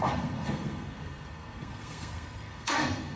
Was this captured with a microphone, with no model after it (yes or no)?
no